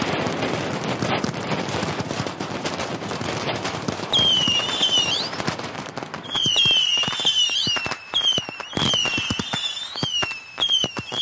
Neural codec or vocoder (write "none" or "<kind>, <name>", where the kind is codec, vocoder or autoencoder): none